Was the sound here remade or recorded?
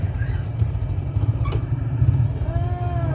recorded